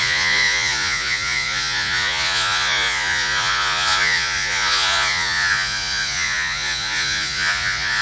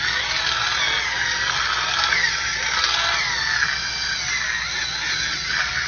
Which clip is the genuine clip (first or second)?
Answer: second